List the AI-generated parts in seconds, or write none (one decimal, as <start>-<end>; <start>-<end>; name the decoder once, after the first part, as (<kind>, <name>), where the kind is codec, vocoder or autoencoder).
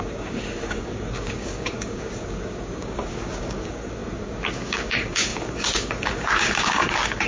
0.0-7.3 (codec, DAC)